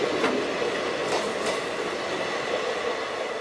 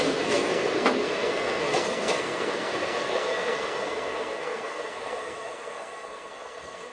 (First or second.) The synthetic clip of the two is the second